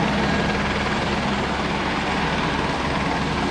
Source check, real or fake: real